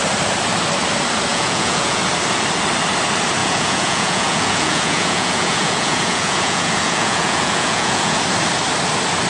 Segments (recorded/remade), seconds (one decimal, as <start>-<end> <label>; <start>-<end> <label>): 0.0-1.3 recorded; 1.3-2.0 remade; 2.0-3.4 recorded; 3.4-8.2 remade; 8.2-9.3 recorded